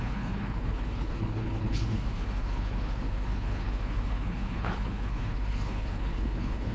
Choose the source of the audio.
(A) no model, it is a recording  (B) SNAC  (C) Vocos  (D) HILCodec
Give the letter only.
D